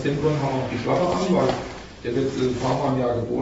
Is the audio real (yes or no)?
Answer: yes